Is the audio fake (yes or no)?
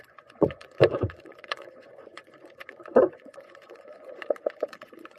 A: yes